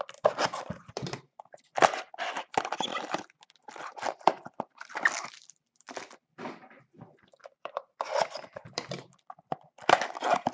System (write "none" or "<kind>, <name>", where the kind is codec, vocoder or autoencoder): vocoder, BigVGAN v2